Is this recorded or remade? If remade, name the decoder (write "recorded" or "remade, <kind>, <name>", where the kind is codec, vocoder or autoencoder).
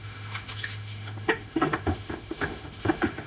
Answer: remade, autoencoder, DAC-VAE